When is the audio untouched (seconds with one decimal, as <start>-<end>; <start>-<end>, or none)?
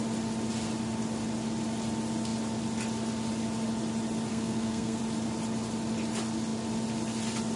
0.0-4.3; 5.0-7.6